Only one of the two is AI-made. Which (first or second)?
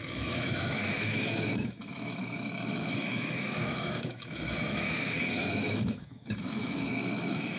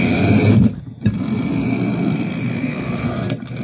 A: first